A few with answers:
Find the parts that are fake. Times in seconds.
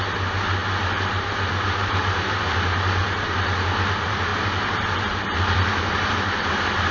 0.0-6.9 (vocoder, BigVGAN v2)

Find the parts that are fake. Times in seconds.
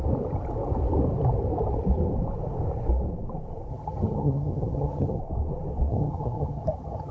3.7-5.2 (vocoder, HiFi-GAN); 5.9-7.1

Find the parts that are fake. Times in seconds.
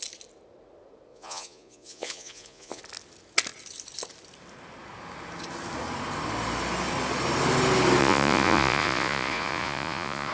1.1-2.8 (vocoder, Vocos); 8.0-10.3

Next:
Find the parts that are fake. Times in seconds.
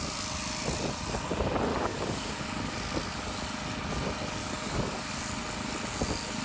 1.7-2.6 (codec, DAC); 4.4-5.1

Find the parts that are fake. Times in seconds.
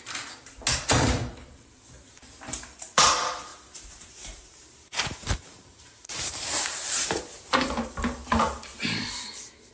3.5-7.5 (vocoder, BigVGAN v2); 8.2-9.7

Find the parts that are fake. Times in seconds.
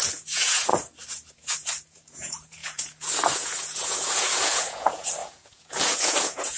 0.0-0.7 (vocoder, Vocos); 1.3-6.6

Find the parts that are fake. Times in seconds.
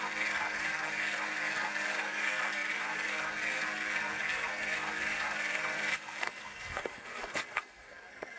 0.0-8.4 (codec, SNAC)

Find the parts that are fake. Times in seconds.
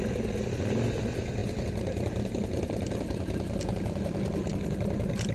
none